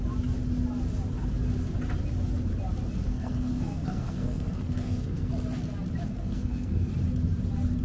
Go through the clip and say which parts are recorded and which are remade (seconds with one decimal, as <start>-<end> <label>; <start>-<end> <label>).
0.0-3.1 recorded; 3.1-5.3 remade; 5.3-6.1 recorded; 6.1-6.9 remade; 6.9-7.8 recorded